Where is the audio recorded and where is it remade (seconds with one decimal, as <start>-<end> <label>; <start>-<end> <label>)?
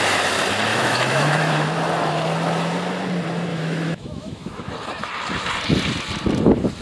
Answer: 0.0-0.7 recorded; 0.7-1.5 remade; 1.5-3.5 recorded; 3.5-4.7 remade; 4.7-6.8 recorded